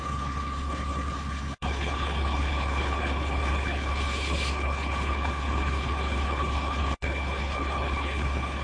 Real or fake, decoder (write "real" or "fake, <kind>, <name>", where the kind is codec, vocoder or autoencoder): fake, codec, HILCodec